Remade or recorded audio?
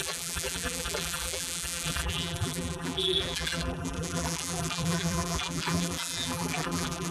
remade